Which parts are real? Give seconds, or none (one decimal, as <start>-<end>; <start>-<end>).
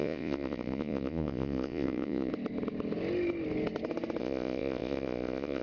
2.3-4.2